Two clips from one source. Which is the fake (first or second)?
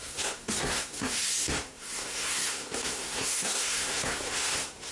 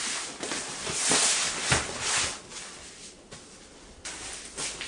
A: first